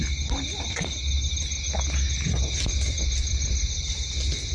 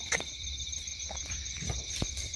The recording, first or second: first